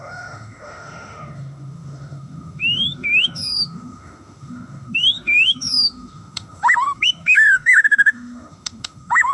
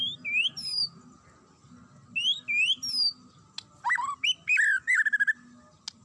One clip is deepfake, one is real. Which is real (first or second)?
second